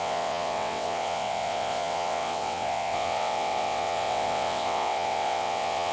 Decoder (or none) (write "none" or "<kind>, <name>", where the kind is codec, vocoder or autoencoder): vocoder, WaveNeXt